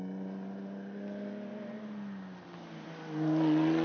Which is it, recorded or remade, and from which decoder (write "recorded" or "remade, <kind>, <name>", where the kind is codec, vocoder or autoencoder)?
recorded